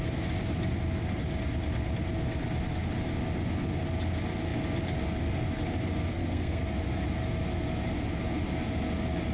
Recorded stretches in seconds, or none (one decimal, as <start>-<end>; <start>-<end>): 0.0-6.1; 6.6-9.3